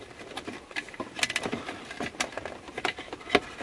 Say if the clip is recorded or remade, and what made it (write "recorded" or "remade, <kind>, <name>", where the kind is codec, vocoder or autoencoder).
recorded